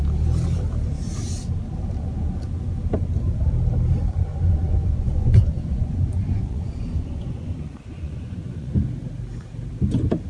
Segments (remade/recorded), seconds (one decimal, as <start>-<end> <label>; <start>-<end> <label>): 0.0-4.3 recorded; 4.3-8.7 remade; 8.7-10.3 recorded